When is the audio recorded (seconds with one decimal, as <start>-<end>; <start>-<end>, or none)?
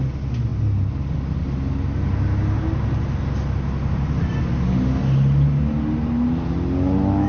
0.0-7.3